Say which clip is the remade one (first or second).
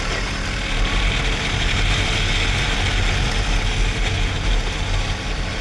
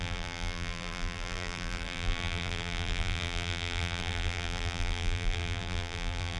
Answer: second